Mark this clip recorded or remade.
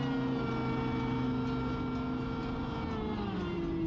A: recorded